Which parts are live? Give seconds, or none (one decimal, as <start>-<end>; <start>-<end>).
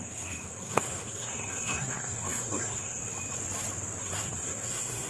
3.0-4.0